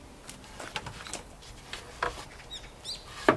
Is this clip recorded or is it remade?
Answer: recorded